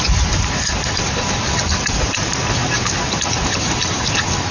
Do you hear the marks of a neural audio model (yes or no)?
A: no